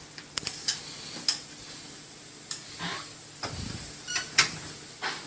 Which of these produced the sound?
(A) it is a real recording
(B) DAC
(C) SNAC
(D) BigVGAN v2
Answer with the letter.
A